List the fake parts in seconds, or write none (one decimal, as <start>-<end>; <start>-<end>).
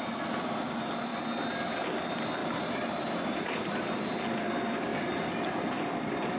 2.4-3.8; 4.9-5.8